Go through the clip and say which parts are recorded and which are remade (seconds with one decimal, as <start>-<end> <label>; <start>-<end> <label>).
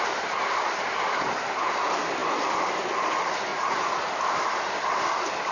0.0-3.5 recorded; 3.5-4.1 remade; 4.1-5.5 recorded